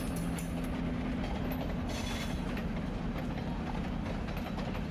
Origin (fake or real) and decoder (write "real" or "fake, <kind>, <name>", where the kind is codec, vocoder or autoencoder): real